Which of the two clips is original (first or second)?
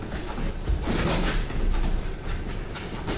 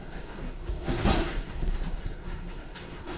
first